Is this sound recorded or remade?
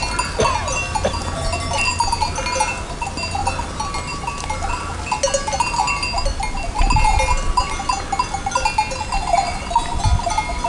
recorded